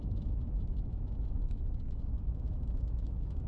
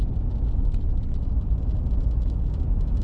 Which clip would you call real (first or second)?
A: second